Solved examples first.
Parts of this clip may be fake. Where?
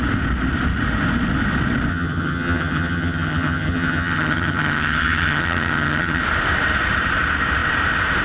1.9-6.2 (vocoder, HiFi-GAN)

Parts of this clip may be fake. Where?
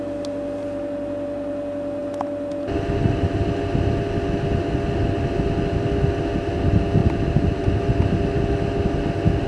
7.0-7.8 (vocoder, BigVGAN v2)